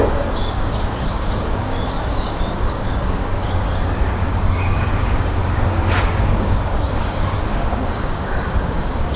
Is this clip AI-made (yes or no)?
yes